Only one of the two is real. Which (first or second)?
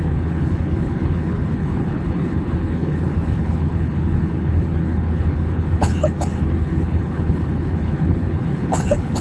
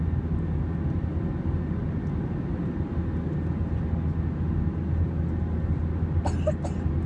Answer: second